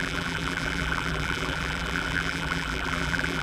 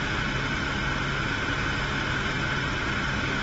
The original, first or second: second